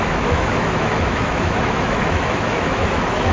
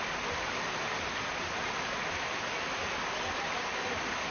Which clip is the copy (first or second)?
first